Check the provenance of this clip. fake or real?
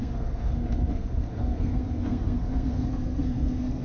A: fake